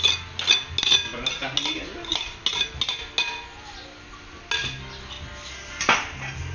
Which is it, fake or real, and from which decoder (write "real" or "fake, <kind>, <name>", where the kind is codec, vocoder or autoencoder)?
real